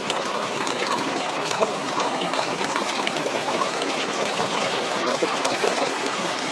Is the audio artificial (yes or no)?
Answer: yes